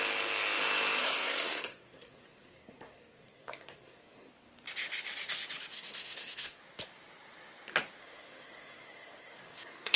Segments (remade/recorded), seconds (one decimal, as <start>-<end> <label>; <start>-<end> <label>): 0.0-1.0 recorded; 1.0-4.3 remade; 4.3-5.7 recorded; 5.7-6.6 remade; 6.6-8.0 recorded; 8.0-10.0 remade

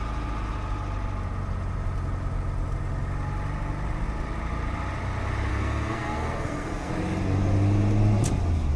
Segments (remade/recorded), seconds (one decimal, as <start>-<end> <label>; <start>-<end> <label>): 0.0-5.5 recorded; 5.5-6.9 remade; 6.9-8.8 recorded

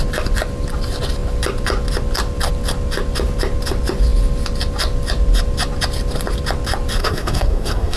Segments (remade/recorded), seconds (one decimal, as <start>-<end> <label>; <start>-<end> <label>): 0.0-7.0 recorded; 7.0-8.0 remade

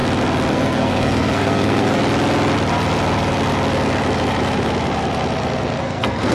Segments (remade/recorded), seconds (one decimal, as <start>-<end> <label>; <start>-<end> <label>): 0.0-0.5 recorded; 0.5-2.0 remade; 2.0-5.8 recorded; 5.8-6.3 remade